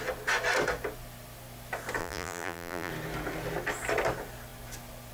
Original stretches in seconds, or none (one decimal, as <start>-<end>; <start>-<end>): 0.0-2.0; 2.9-5.1

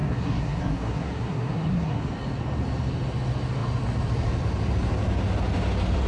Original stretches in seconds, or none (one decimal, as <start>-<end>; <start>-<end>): 2.0-6.1

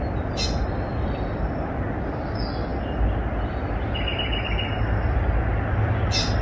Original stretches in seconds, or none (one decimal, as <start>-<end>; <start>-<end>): 0.0-6.4